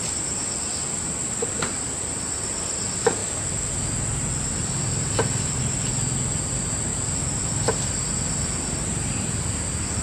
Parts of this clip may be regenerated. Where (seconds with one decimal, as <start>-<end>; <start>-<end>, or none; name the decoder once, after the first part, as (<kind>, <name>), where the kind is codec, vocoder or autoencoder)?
none